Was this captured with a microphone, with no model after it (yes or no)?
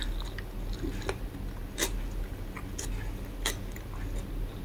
yes